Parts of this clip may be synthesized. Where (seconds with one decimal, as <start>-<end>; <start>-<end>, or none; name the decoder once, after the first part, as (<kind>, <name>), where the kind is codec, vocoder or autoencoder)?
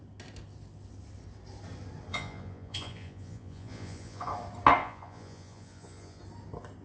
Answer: 2.1-4.3 (vocoder, Vocos); 4.8-6.2